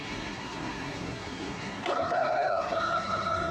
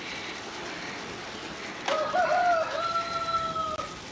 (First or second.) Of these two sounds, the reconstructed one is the first